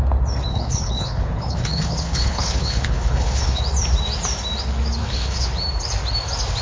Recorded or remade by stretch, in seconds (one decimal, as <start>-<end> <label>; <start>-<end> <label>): 0.0-0.5 recorded; 0.5-3.6 remade; 3.6-5.0 recorded; 5.0-5.5 remade; 5.5-6.6 recorded